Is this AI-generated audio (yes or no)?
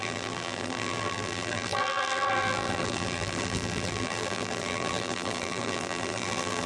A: yes